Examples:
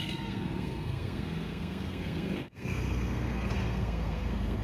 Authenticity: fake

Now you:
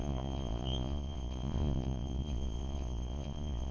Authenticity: fake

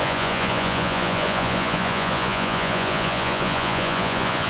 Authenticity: fake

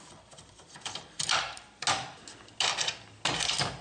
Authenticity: real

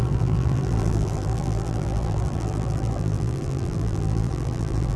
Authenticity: fake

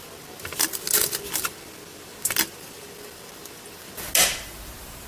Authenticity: real